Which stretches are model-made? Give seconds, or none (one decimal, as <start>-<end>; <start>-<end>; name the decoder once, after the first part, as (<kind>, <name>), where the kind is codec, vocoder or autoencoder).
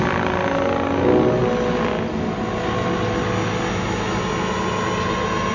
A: none